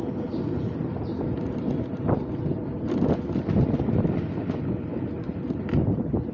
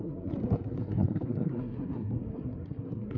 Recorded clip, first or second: first